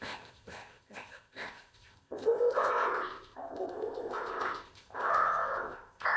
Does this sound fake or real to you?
fake